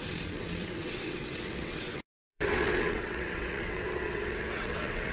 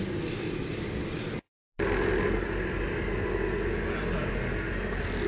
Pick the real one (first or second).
second